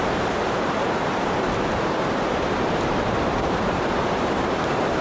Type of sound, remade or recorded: remade